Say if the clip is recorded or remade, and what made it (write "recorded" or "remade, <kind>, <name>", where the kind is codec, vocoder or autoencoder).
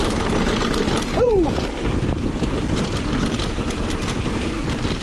remade, vocoder, BigVGAN v2